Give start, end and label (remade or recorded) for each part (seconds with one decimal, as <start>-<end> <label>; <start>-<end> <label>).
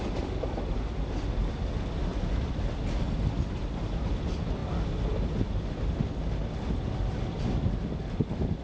0.0-8.6 recorded